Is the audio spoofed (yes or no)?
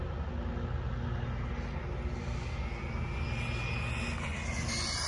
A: no